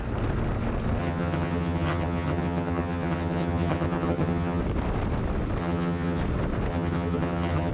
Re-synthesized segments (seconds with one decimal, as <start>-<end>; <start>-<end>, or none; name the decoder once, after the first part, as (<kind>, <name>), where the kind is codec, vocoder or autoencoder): 1.0-4.6 (vocoder, HiFi-GAN); 5.6-6.2; 6.7-7.7